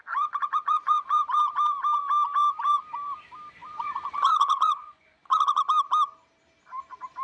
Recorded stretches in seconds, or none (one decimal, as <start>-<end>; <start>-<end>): 1.3-3.6; 5.6-7.2